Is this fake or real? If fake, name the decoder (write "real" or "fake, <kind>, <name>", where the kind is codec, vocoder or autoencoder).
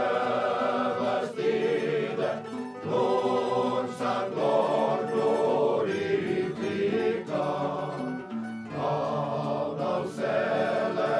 real